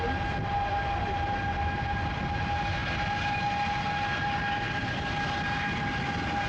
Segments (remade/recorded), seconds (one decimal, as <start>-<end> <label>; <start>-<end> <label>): 0.0-6.5 recorded